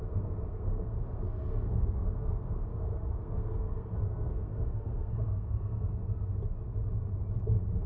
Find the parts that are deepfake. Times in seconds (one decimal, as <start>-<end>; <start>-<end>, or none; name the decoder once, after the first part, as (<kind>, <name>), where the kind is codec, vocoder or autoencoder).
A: 0.0-5.9 (codec, SNAC)